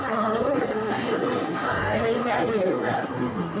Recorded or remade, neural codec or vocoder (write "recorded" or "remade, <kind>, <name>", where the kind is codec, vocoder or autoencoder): remade, codec, SNAC